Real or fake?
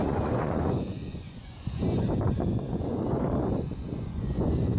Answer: fake